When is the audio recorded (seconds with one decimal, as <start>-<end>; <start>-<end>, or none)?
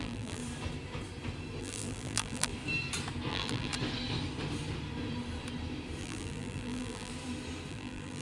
0.4-1.6; 2.5-3.3; 3.7-6.0; 7.1-7.7